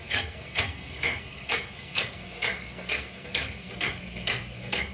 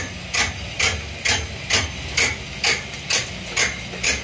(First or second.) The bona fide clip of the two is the second